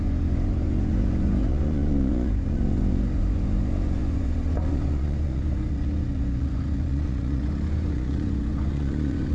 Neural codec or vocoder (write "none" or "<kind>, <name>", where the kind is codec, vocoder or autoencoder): vocoder, Vocos